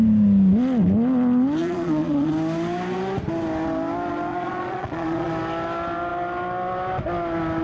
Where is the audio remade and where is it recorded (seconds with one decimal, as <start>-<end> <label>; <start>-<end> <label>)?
0.0-1.6 recorded; 1.6-2.3 remade; 2.3-4.3 recorded; 4.3-5.3 remade; 5.3-7.6 recorded